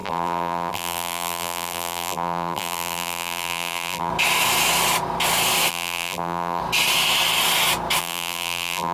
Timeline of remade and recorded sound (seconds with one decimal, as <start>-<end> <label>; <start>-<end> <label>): 0.0-4.1 remade; 4.1-5.7 recorded; 5.7-6.6 remade; 6.6-8.0 recorded; 8.0-8.9 remade